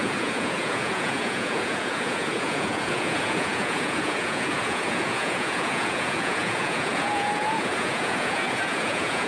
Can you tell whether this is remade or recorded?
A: remade